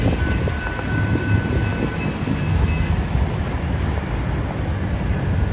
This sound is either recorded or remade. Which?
recorded